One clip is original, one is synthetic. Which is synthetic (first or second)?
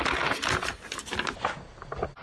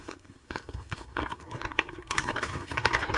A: second